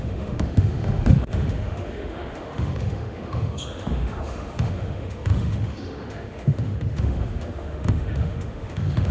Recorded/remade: remade